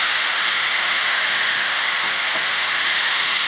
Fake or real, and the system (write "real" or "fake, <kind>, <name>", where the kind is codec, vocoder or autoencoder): fake, autoencoder, DAC-VAE